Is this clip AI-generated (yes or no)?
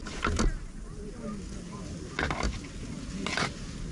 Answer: no